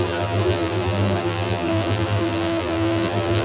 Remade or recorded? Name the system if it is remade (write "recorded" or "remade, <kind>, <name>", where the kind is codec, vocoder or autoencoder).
remade, vocoder, BigVGAN v2